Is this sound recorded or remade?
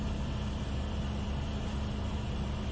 remade